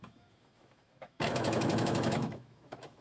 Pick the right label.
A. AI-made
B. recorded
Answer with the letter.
A